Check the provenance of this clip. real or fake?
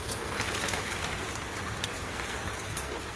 fake